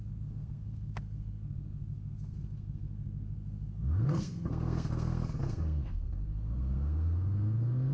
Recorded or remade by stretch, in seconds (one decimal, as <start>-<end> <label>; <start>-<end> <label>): 0.0-7.9 remade